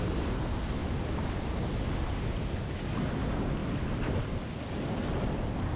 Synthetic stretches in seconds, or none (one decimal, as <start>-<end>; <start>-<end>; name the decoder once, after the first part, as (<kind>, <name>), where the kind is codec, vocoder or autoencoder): none